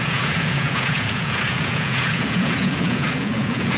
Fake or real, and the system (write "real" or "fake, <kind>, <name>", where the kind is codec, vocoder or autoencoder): fake, vocoder, Vocos